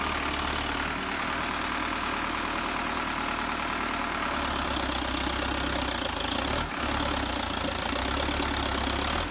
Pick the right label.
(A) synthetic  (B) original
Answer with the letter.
B